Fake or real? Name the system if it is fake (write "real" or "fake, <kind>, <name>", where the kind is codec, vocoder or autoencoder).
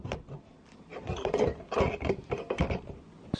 real